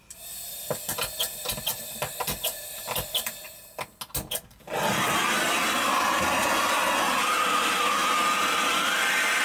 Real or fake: real